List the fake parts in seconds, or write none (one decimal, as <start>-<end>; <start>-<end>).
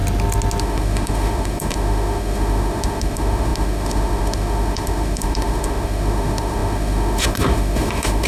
0.6-8.3